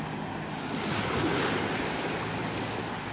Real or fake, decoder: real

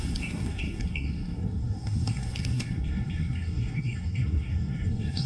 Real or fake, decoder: fake, codec, SNAC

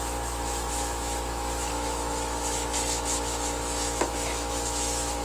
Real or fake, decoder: fake, autoencoder, DAC-VAE